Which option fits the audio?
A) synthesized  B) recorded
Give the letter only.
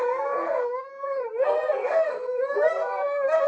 A